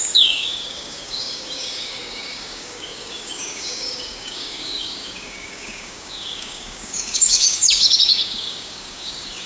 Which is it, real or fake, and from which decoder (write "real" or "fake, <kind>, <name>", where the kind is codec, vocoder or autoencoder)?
fake, codec, DAC